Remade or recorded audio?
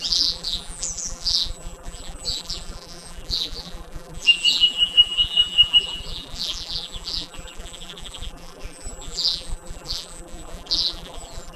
remade